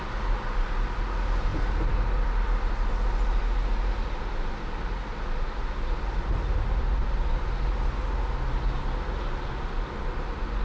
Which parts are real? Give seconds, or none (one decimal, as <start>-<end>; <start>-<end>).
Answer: 0.0-10.6